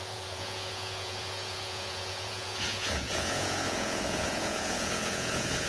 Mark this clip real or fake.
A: fake